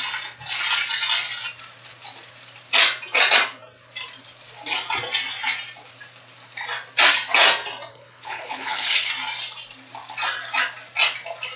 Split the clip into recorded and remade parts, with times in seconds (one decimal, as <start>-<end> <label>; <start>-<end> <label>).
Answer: 0.0-7.9 recorded; 7.9-9.1 remade; 9.1-11.6 recorded